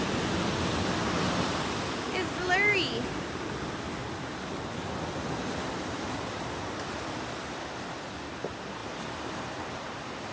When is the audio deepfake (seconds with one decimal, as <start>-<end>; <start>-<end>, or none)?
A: none